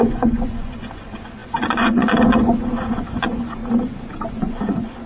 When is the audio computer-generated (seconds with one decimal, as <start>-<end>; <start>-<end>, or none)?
0.0-3.6; 4.3-5.1